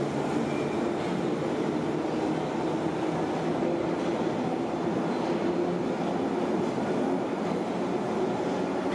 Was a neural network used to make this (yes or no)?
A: no